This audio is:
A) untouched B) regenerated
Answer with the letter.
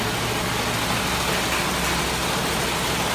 A